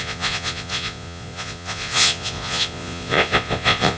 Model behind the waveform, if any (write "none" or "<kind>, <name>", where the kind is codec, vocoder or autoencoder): vocoder, Vocos